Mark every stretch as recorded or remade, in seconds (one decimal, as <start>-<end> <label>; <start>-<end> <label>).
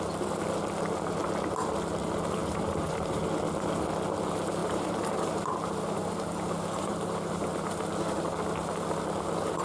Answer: 0.0-2.4 recorded; 2.4-3.2 remade; 3.2-4.6 recorded; 4.6-7.8 remade; 7.8-9.6 recorded